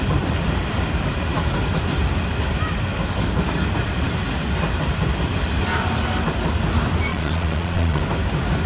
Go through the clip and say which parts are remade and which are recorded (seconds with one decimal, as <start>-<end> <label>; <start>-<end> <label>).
0.0-7.1 recorded; 7.1-8.0 remade; 8.0-8.7 recorded